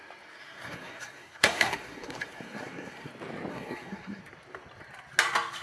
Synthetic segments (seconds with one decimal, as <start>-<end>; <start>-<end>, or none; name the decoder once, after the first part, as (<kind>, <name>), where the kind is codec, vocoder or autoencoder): 0.4-3.1 (codec, SNAC); 3.5-4.2

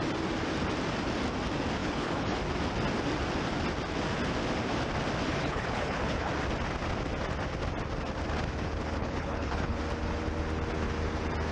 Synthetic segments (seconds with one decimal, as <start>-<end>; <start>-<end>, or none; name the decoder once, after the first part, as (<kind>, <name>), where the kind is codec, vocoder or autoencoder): 1.8-2.4 (codec, HILCodec); 5.4-6.3; 9.0-9.8